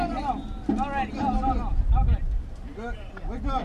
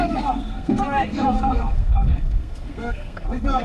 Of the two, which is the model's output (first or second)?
second